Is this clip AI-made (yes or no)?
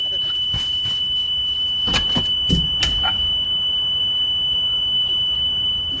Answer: no